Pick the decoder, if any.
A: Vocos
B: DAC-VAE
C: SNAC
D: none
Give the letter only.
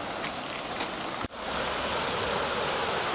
D